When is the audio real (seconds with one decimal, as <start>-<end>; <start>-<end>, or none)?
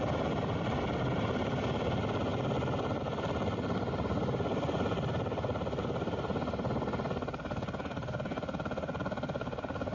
0.0-9.9